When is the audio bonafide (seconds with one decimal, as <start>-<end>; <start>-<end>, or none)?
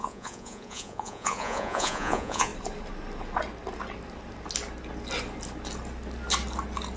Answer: 2.5-7.0